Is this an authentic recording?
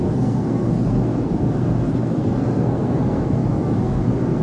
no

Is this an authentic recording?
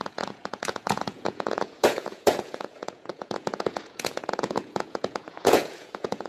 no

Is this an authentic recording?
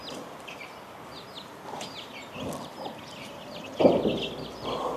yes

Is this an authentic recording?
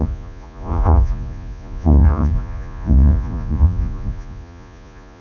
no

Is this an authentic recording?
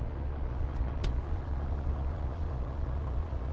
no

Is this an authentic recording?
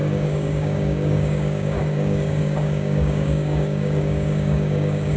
no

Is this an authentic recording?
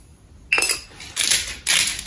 yes